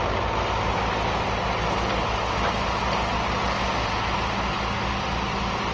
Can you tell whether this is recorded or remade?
recorded